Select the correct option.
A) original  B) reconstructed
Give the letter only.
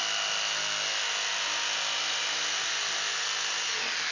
A